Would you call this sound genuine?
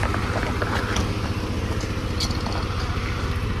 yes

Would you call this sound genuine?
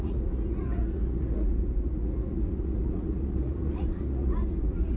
no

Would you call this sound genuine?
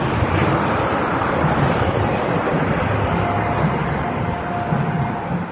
yes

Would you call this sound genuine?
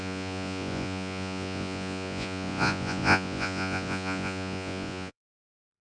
no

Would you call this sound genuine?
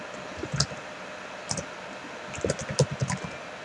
yes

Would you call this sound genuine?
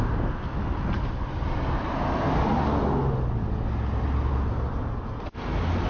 yes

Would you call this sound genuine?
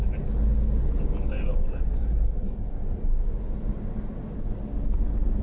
yes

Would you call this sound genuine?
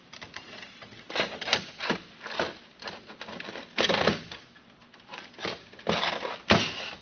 yes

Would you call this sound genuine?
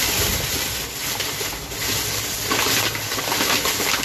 yes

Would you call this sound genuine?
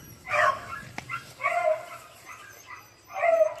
yes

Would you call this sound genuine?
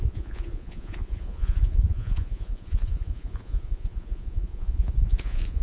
no